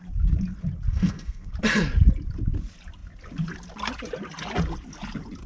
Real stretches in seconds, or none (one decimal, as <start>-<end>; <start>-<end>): 0.0-0.9; 1.5-5.5